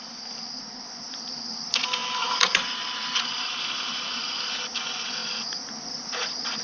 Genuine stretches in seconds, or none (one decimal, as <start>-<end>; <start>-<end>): 0.0-6.6